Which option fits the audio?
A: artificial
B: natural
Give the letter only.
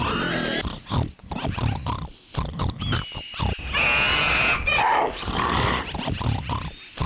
B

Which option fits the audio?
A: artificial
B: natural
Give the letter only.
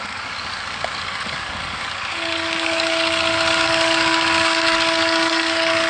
A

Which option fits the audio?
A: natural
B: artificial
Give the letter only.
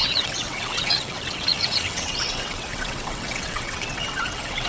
B